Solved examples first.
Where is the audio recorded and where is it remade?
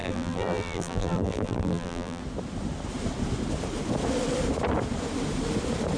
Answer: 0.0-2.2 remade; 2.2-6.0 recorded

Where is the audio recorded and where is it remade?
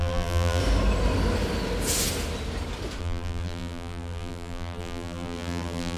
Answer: 0.0-0.6 remade; 0.6-3.0 recorded; 3.0-6.0 remade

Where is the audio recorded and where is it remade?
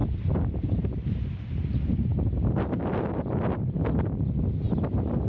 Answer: 0.0-5.3 recorded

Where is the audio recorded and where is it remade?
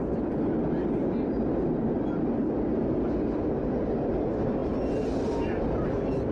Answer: 0.0-6.3 recorded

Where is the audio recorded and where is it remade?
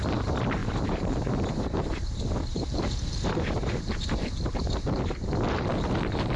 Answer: 0.0-0.6 recorded; 0.6-4.2 remade; 4.2-6.4 recorded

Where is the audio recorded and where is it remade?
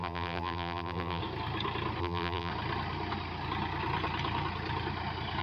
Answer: 0.0-1.2 remade; 1.2-2.0 recorded; 2.0-2.5 remade; 2.5-5.4 recorded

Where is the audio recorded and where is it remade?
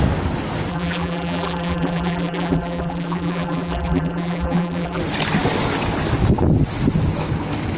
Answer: 0.0-0.7 recorded; 0.7-5.0 remade; 5.0-7.8 recorded